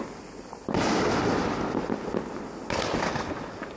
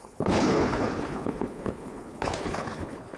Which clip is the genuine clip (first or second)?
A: first